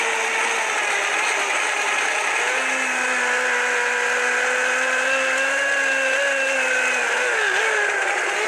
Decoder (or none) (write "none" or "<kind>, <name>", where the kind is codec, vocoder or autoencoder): none